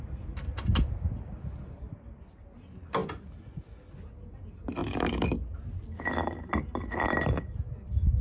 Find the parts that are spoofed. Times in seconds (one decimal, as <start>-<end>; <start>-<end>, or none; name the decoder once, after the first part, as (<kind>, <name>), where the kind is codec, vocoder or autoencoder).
none